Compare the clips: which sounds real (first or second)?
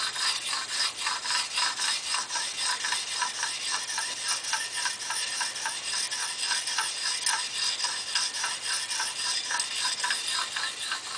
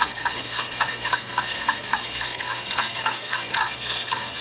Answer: first